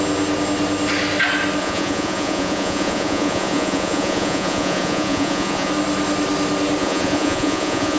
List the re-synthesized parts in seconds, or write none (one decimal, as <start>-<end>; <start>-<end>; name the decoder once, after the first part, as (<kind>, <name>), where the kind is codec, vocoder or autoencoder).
1.6-5.7 (vocoder, Vocos); 6.8-8.0